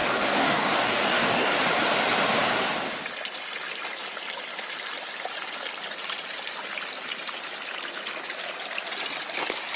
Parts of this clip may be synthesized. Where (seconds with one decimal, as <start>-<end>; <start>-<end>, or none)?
0.0-1.5